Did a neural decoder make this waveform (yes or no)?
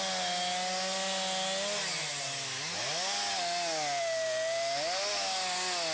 no